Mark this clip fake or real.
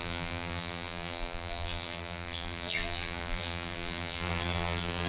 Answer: fake